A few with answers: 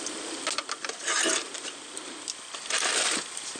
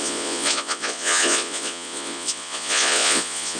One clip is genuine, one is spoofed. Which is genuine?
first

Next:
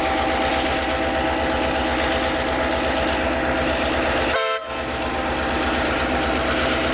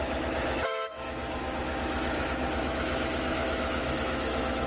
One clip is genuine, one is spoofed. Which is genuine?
first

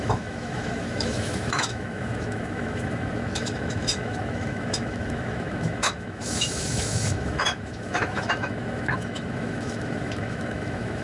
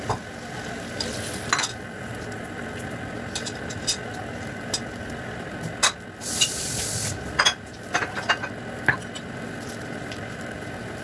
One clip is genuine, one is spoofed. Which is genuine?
second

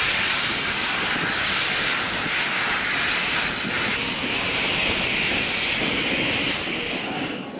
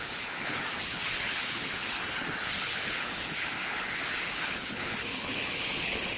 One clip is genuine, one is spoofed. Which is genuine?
first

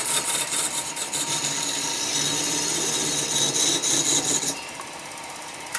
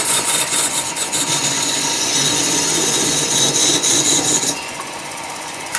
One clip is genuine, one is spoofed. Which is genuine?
first